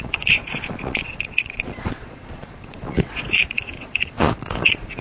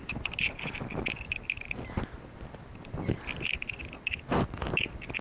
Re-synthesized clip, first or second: first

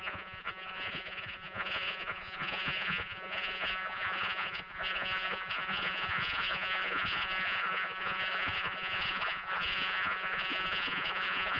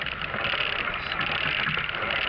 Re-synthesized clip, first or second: first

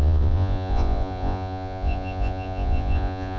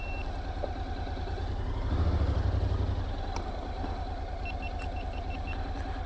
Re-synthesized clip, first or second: first